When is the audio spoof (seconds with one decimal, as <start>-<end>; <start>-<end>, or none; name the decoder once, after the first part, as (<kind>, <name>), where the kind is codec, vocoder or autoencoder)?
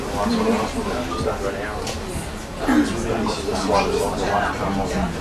none